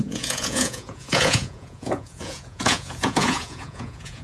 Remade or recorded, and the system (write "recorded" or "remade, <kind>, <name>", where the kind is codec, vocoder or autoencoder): remade, vocoder, Vocos